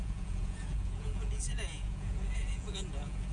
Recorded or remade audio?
remade